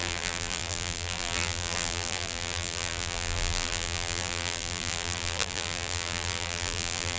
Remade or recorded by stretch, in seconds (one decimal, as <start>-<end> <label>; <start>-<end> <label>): 0.0-7.2 remade

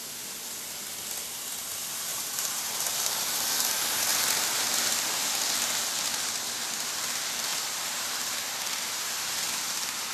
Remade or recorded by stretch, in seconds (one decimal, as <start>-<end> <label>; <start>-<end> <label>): 0.0-2.1 recorded; 2.1-3.1 remade; 3.1-7.5 recorded; 7.5-9.1 remade; 9.1-10.1 recorded